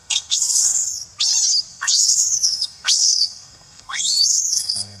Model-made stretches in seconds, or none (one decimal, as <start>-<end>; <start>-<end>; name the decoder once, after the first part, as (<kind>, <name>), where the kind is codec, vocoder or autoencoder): 0.0-1.0 (codec, SNAC); 1.7-5.0